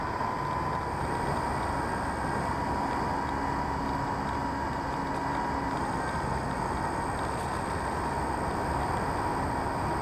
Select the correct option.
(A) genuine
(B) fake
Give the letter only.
A